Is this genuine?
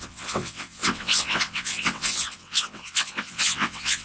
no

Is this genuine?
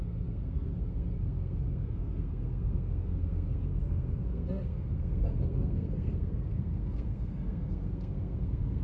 no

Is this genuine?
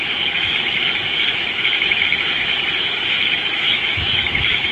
no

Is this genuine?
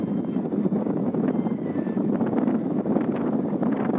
yes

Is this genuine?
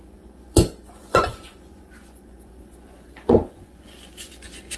no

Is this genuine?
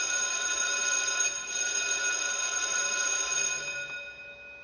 yes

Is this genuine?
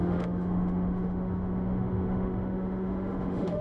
no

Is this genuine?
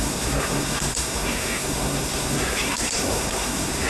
no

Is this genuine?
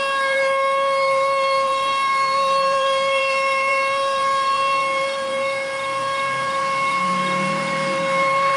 no